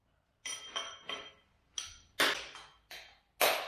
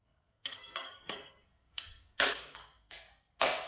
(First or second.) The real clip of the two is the first